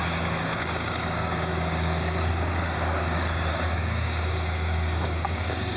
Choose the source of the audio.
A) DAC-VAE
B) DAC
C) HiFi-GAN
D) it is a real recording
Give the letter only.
B